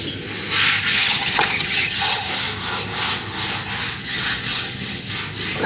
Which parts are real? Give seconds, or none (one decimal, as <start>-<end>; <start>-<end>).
0.0-0.9; 2.3-4.0; 5.1-5.7